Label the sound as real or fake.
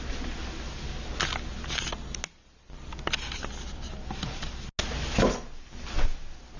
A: real